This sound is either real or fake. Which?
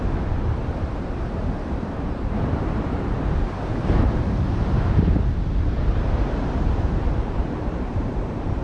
fake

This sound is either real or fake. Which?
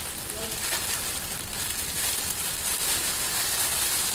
real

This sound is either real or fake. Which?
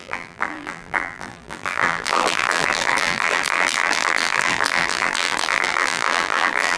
fake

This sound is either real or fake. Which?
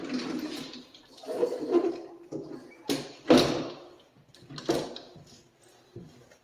real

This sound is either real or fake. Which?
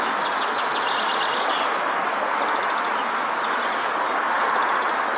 real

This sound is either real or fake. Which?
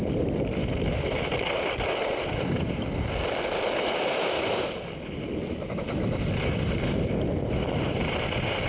real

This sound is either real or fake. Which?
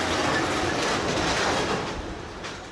fake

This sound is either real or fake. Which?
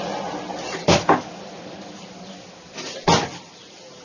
real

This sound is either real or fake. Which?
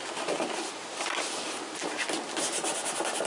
real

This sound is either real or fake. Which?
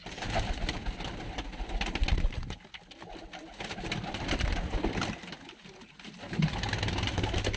real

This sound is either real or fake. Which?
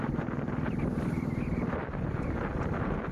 fake